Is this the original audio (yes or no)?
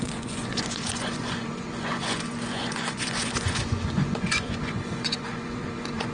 no